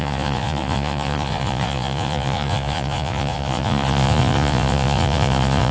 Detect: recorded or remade remade